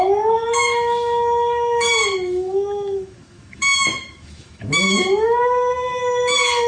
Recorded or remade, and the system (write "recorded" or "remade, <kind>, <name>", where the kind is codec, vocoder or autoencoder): remade, autoencoder, DAC-VAE